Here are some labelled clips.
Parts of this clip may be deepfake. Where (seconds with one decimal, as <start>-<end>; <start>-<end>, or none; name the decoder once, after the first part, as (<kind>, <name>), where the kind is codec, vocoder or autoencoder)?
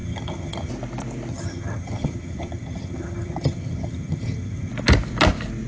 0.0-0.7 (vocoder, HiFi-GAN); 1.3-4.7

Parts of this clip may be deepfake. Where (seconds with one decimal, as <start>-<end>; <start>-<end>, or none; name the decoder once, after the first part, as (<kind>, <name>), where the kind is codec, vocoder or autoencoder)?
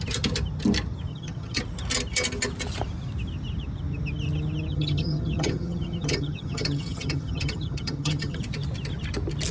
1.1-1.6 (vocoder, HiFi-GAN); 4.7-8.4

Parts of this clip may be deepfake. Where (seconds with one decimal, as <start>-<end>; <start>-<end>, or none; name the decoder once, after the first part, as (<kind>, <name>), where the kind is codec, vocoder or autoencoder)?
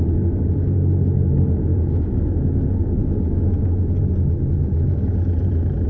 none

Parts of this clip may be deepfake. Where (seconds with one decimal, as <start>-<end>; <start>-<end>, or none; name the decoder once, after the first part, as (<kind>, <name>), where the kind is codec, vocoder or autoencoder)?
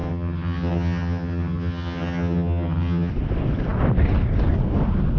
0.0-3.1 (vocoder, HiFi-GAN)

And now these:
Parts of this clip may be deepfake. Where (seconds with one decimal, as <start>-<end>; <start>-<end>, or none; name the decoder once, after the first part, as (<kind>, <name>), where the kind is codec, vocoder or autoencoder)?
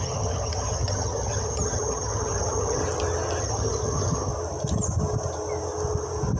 0.0-2.8 (vocoder, HiFi-GAN); 3.4-4.3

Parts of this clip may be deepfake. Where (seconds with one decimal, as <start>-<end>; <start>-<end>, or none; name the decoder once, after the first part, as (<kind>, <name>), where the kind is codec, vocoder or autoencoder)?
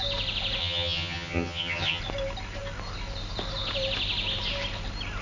0.6-2.0 (vocoder, HiFi-GAN)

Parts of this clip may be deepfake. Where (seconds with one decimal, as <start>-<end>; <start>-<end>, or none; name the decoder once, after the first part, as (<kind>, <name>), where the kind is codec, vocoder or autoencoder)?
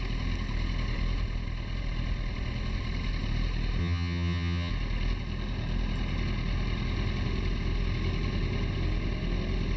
3.8-4.7 (vocoder, HiFi-GAN)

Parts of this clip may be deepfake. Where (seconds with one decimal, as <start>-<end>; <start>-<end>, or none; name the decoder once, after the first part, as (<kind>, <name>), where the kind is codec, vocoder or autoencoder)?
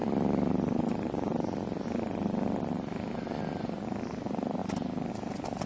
none